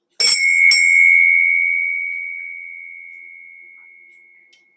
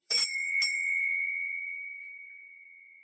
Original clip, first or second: first